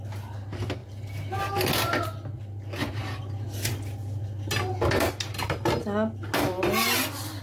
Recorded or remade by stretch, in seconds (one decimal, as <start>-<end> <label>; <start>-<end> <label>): 0.0-7.4 recorded